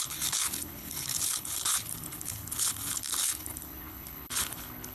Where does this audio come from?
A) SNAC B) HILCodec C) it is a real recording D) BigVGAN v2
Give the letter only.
B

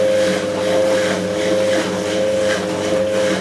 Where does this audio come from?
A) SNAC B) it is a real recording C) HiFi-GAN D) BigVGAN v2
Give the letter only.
B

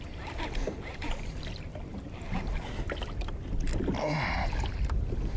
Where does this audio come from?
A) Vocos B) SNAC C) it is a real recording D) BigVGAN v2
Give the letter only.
C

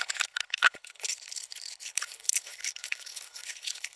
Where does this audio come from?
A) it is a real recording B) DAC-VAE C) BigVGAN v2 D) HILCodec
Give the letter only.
D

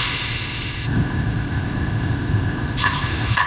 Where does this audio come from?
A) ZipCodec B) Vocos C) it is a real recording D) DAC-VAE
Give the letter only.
A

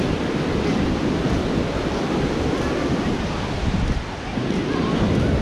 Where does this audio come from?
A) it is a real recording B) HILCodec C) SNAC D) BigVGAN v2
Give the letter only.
A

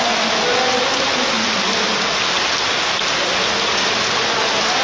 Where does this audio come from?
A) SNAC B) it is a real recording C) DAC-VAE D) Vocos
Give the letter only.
B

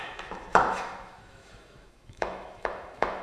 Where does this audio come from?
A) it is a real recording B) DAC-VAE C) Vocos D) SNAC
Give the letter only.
B